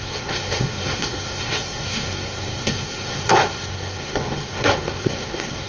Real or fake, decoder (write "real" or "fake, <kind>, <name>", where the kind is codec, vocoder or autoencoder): fake, codec, SNAC